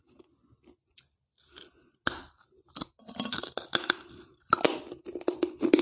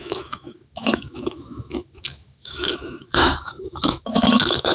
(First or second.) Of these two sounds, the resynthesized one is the second